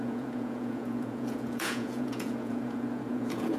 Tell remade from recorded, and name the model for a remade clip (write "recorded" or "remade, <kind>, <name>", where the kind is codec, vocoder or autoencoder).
remade, vocoder, Vocos